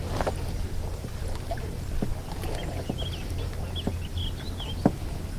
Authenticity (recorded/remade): recorded